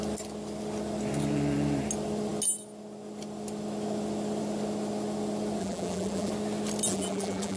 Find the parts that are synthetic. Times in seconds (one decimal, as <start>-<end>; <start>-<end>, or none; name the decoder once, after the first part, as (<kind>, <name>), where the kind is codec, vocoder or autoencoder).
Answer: 5.6-6.3 (vocoder, BigVGAN v2); 6.9-7.6